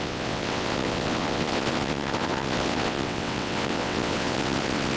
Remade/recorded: remade